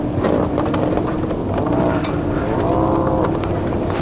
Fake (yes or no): no